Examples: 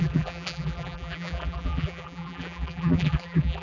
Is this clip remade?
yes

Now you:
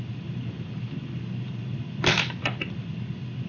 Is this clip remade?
no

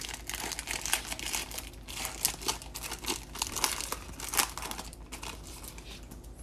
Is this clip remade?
no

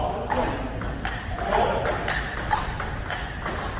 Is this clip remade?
yes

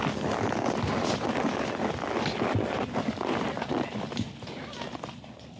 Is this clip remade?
no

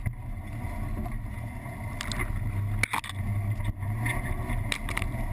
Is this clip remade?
no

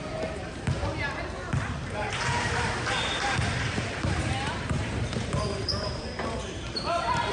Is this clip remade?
yes